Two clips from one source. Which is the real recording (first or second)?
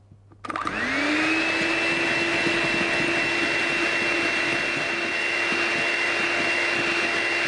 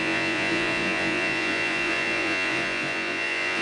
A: first